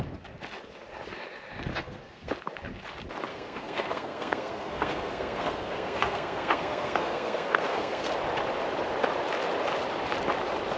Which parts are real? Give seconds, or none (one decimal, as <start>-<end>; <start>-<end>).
0.0-1.7; 2.3-3.3; 8.1-10.8